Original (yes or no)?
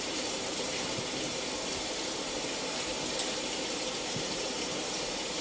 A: no